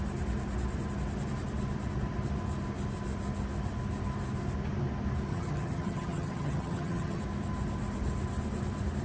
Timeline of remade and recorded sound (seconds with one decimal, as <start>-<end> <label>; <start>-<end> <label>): 0.0-5.3 recorded; 5.3-7.2 remade; 7.2-9.0 recorded